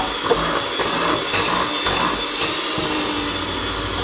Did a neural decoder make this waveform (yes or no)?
no